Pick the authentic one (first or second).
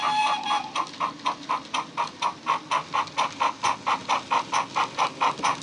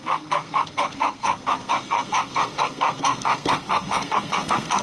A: first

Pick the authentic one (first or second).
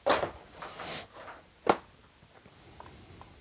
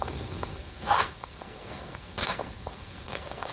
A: first